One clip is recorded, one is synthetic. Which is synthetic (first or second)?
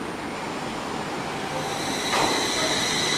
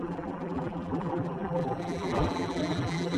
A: second